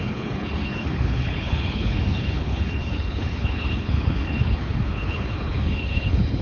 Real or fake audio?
fake